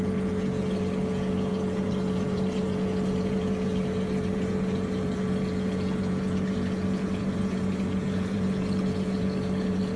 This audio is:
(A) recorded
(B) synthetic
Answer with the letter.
B